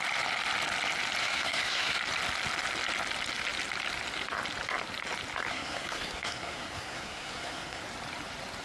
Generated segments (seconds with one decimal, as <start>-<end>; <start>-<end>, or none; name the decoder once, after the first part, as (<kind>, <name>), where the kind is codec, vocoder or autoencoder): 1.2-2.0 (codec, SNAC); 5.5-7.8